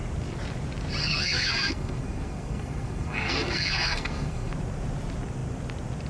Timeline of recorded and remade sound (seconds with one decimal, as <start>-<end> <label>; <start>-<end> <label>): 0.0-1.0 recorded; 1.0-4.5 remade; 4.5-6.1 recorded